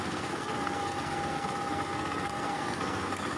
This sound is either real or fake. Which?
fake